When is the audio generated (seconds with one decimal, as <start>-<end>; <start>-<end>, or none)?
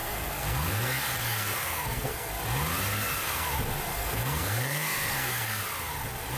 0.0-2.3; 2.9-3.5; 3.9-5.6